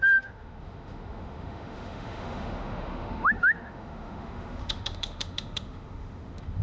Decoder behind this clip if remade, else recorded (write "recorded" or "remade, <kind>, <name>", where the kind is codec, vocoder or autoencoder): remade, autoencoder, DAC-VAE